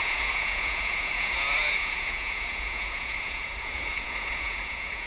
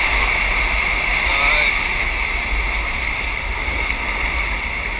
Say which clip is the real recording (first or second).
second